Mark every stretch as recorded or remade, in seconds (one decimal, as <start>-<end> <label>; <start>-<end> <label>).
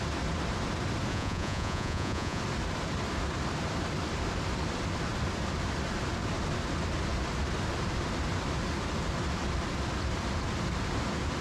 0.0-1.1 recorded; 1.1-2.4 remade; 2.4-11.4 recorded